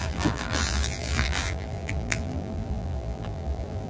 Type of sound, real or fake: fake